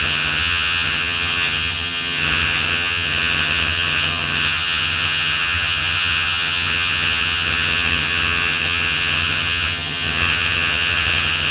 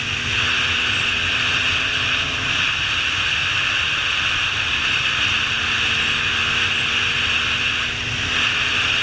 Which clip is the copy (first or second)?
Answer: first